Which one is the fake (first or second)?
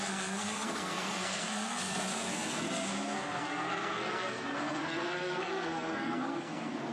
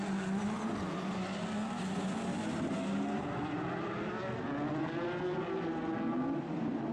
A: first